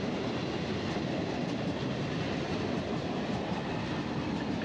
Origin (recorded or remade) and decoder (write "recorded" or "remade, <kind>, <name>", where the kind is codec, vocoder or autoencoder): recorded